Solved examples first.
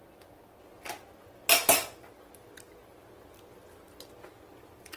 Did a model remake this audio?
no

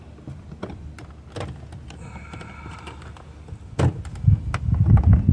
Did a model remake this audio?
no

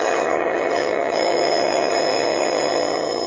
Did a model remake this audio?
yes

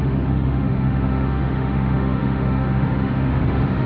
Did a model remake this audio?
yes